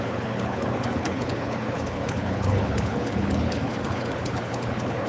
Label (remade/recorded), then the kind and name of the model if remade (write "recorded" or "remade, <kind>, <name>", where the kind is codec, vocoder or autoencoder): remade, codec, HILCodec